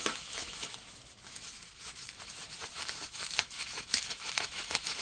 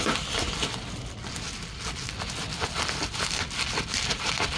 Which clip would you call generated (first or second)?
first